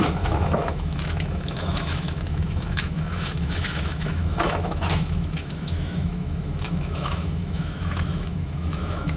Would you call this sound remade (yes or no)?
yes